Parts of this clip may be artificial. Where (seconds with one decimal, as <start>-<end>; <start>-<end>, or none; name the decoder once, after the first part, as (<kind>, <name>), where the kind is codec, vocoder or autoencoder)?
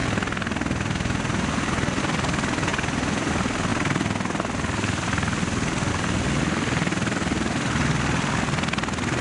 2.7-3.3 (vocoder, BigVGAN v2)